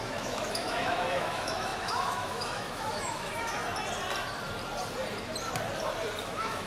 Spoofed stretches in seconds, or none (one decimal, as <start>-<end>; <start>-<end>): 0.0-3.6; 6.2-6.7